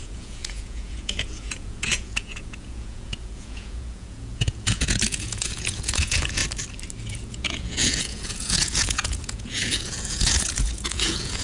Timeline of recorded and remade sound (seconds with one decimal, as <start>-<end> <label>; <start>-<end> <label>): 0.0-6.4 remade; 6.4-7.1 recorded; 7.1-11.4 remade